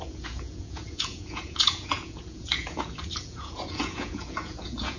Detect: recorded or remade remade